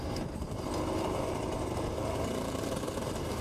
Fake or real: fake